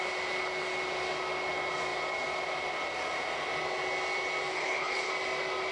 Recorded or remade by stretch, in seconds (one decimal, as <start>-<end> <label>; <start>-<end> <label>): 0.0-4.5 recorded; 4.5-5.1 remade; 5.1-5.7 recorded